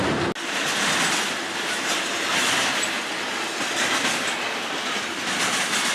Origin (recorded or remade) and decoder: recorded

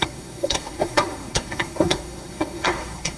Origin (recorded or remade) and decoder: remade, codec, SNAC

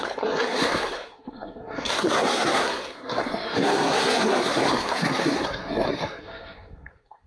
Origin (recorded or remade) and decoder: remade, codec, SNAC